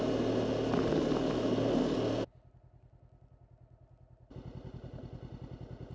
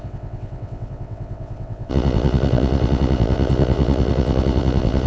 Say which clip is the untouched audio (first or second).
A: first